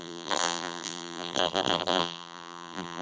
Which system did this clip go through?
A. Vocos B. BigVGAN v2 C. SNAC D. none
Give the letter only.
B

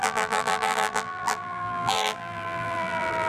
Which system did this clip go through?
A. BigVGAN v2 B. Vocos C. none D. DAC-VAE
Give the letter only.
A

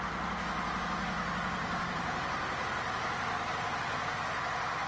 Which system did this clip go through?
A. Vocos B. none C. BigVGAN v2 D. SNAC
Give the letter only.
B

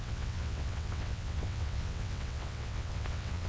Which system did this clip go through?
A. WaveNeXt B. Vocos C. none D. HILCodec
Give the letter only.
A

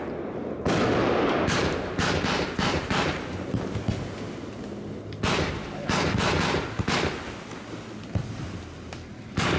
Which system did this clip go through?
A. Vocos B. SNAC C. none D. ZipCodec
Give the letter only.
C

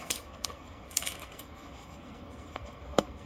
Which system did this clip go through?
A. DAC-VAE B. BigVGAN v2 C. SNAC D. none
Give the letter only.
C